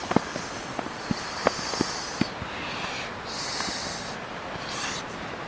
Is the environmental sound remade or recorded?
recorded